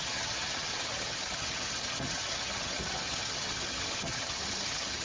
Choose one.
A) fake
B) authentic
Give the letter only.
A